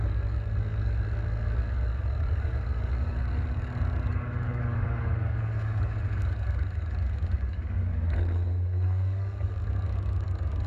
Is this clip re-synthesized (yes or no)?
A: yes